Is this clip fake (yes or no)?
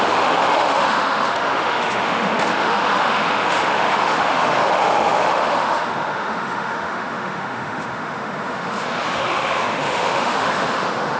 yes